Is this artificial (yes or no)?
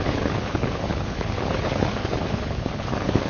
yes